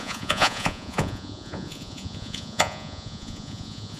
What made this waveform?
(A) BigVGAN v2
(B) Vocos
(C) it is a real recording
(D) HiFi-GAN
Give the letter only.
B